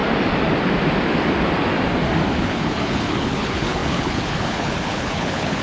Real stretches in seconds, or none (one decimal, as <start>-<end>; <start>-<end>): 0.0-2.4